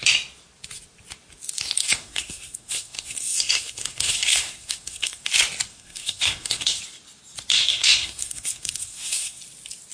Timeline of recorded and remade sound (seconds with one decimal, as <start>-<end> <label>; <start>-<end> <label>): 0.0-1.8 recorded; 1.8-5.3 remade; 5.3-5.7 recorded; 5.7-6.8 remade; 6.8-7.5 recorded; 7.5-9.4 remade; 9.4-9.9 recorded